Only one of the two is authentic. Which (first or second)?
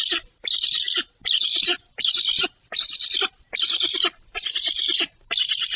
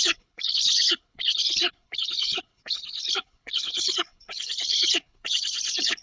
first